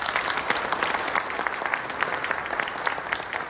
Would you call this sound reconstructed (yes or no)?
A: no